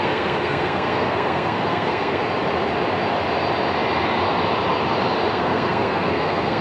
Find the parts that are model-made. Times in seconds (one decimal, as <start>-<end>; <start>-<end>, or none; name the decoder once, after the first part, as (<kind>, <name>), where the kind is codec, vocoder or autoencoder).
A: 0.0-2.2 (codec, SNAC); 5.3-6.6